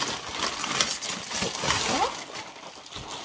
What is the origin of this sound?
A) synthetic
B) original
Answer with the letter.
B